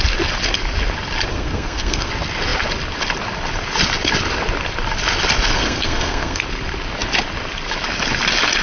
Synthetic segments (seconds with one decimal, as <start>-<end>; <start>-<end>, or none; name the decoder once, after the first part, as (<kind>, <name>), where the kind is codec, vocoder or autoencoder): 1.3-2.1 (codec, SNAC); 5.5-6.4